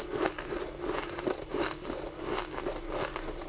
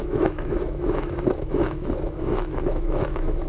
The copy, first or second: second